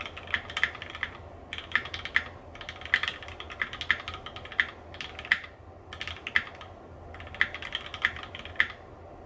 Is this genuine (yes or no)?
yes